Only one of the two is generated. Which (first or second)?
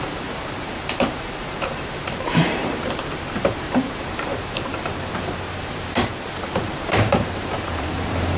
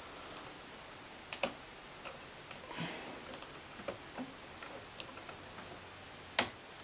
first